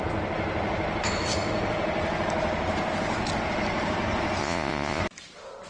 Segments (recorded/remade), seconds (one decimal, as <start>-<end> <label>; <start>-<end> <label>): 0.0-4.4 recorded; 4.4-5.0 remade; 5.0-5.7 recorded